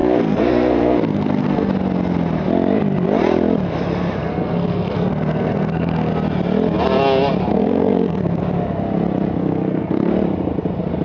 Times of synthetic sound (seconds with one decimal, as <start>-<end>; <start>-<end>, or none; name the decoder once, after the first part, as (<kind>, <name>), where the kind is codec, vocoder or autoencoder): 0.0-1.7 (codec, SNAC); 4.2-6.1; 7.5-8.4; 9.4-10.1